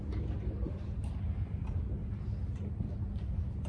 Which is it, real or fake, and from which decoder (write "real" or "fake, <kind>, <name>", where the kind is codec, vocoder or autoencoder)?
real